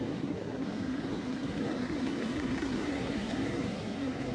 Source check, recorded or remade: remade